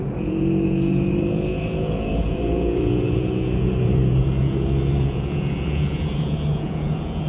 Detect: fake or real fake